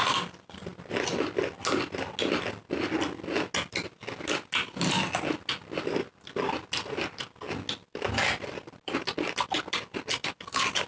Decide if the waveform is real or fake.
real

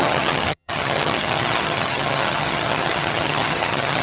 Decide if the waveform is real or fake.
fake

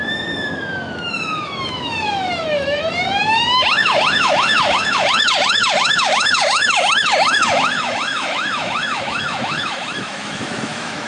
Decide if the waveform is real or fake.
fake